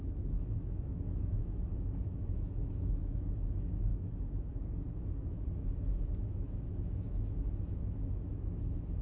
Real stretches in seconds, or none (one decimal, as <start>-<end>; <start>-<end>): none